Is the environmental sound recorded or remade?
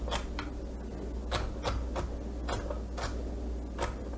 recorded